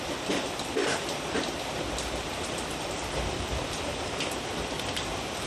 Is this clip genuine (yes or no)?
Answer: no